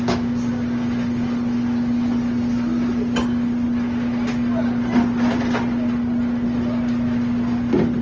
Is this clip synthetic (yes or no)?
no